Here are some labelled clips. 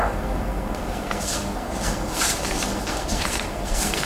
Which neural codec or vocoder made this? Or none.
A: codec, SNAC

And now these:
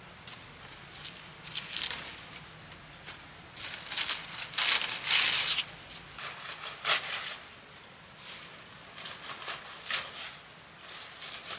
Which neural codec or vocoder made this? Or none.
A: none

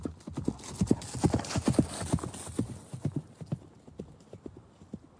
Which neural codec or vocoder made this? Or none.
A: none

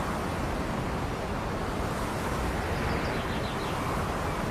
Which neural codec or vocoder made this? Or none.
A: none